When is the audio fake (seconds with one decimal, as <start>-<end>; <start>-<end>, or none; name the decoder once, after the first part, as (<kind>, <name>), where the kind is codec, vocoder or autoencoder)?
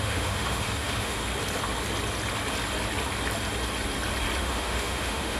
0.0-1.2 (autoencoder, DAC-VAE); 4.4-5.4